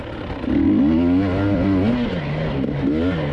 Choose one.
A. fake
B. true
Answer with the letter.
B